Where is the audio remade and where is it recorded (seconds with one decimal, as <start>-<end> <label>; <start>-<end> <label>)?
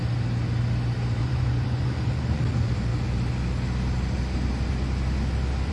0.0-1.2 recorded; 1.2-2.4 remade; 2.4-5.7 recorded